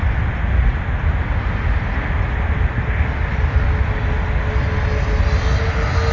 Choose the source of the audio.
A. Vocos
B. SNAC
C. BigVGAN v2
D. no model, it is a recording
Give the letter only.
D